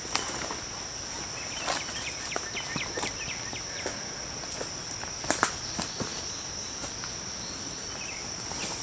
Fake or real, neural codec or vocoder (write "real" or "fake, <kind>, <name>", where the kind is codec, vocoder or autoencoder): real